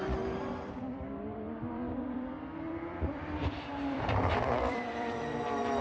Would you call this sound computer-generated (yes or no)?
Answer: yes